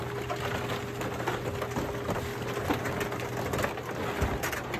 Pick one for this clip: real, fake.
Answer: real